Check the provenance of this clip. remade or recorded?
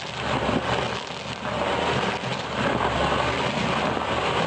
recorded